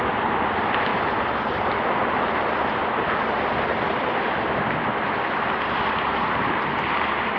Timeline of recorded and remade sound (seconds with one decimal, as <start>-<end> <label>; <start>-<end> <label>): 0.0-7.4 recorded